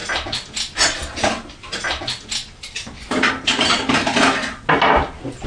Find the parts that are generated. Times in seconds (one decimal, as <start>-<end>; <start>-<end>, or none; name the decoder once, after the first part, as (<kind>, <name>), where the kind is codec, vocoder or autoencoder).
none